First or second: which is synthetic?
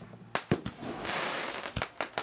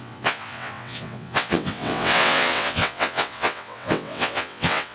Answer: second